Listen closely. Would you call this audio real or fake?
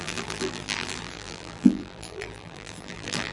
fake